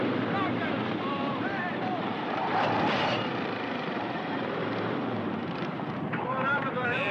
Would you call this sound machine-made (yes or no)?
yes